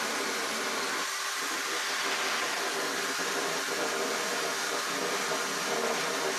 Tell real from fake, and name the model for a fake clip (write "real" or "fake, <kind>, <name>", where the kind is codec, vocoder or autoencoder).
real